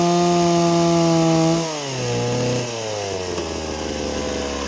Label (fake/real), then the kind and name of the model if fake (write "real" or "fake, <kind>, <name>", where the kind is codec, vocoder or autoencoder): real